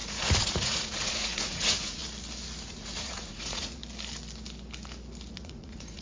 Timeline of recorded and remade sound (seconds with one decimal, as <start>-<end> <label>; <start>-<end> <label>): 0.0-2.0 remade; 2.0-2.6 recorded; 2.6-3.8 remade; 3.8-5.3 recorded; 5.3-6.0 remade